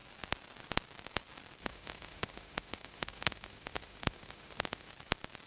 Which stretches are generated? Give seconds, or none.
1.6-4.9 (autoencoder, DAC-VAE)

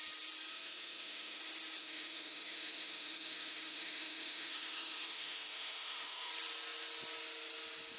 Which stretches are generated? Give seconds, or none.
0.5-1.4 (autoencoder, DAC-VAE); 1.8-6.3

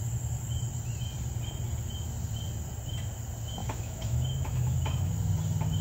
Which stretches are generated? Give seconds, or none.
3.6-5.1 (autoencoder, DAC-VAE)